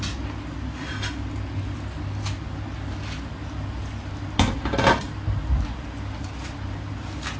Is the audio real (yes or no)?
yes